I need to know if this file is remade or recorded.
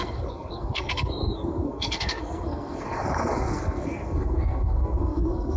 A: remade